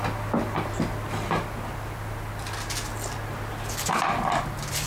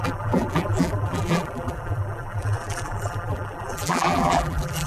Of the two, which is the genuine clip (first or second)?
first